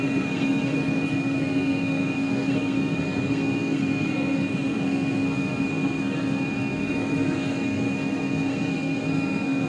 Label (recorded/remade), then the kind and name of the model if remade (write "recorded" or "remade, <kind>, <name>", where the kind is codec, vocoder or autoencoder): remade, codec, SNAC